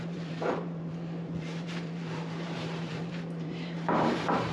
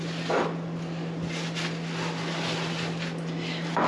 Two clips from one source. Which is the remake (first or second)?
first